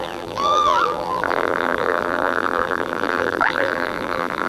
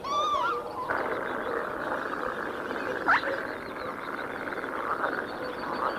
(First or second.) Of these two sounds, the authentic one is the second